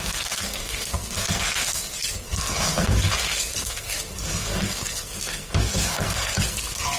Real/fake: fake